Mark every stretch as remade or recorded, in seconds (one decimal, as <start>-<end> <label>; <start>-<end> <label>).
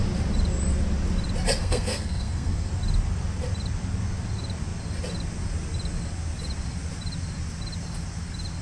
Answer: 0.0-1.6 recorded; 1.6-2.7 remade; 2.7-8.6 recorded